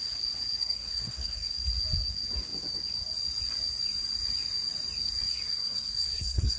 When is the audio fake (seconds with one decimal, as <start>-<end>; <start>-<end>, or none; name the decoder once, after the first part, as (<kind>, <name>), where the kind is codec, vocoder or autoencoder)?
0.6-1.5 (codec, SNAC); 5.3-6.6